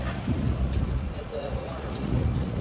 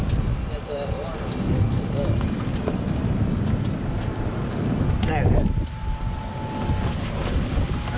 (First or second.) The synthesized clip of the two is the first